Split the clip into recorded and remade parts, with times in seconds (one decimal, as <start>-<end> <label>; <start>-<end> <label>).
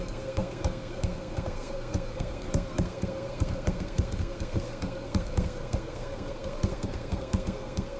0.0-8.0 remade